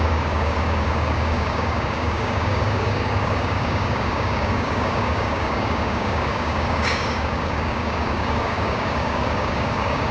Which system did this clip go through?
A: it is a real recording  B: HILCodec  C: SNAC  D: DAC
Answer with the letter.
D